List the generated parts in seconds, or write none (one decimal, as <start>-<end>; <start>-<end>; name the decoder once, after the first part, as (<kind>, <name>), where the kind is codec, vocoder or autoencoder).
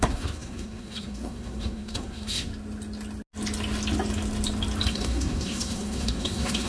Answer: 0.0-2.5 (codec, SNAC); 4.9-6.7